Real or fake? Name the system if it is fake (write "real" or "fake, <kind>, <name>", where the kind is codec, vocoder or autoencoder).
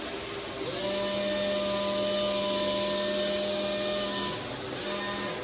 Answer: real